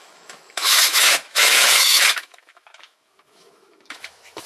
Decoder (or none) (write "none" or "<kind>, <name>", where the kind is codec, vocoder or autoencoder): autoencoder, DAC-VAE